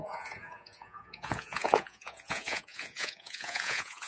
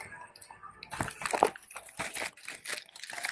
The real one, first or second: second